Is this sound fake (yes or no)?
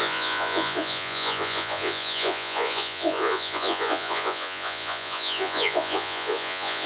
yes